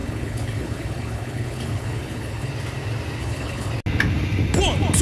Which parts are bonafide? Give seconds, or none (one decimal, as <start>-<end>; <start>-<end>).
2.5-3.2; 3.7-5.0